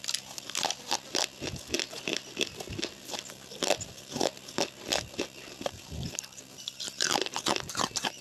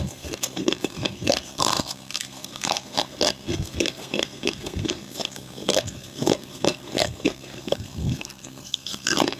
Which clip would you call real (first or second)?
first